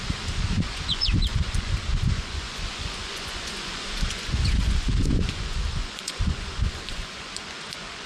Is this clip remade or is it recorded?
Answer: remade